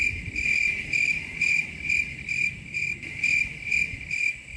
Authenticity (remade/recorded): recorded